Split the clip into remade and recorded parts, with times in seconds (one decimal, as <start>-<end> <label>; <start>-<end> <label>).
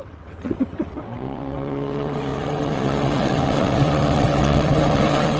0.0-5.4 remade